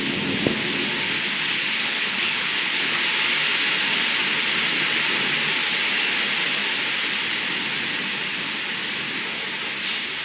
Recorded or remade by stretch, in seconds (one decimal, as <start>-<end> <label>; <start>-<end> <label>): 0.0-1.8 recorded; 1.8-3.0 remade; 3.0-10.2 recorded